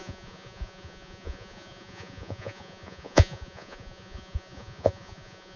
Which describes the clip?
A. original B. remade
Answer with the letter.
B